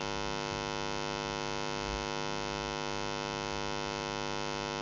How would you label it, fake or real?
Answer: real